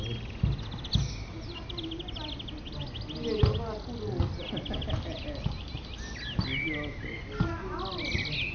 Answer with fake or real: real